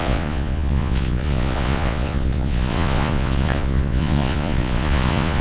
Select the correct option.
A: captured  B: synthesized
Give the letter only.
B